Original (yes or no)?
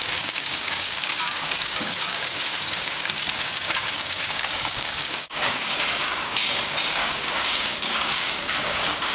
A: no